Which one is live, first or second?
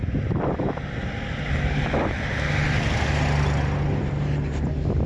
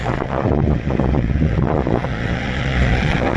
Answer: first